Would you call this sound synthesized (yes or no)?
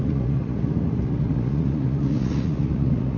yes